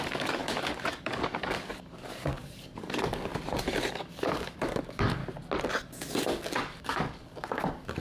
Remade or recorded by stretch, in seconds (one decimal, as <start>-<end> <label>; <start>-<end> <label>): 0.0-3.3 remade; 3.3-3.9 recorded; 3.9-5.2 remade; 5.2-5.9 recorded; 5.9-8.0 remade